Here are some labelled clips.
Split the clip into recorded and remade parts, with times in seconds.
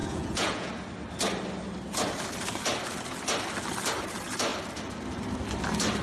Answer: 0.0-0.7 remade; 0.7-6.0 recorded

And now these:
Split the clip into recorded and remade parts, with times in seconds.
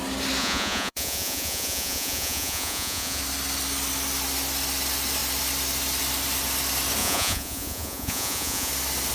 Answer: 0.0-0.4 recorded; 0.4-3.2 remade; 3.2-7.0 recorded; 7.0-8.7 remade; 8.7-9.1 recorded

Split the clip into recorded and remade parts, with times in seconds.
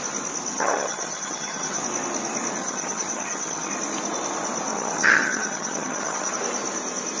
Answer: 0.0-0.5 recorded; 0.5-1.8 remade; 1.8-2.6 recorded; 2.6-3.7 remade; 3.7-4.7 recorded; 4.7-6.3 remade; 6.3-7.2 recorded